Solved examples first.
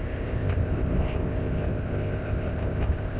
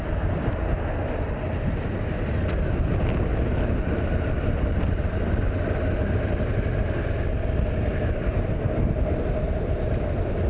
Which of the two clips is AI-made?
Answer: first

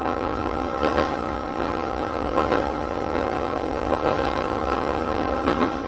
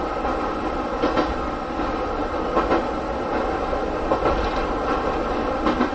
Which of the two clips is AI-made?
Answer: first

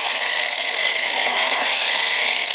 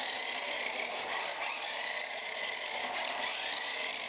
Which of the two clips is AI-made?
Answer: first